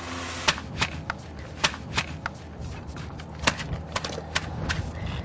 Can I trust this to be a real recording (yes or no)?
yes